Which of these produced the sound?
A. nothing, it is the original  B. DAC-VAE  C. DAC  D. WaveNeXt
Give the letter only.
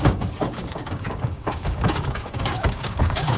C